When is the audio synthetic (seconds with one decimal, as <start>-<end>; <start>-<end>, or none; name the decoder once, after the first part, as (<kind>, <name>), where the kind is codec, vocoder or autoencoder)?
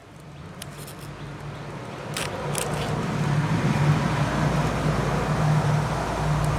none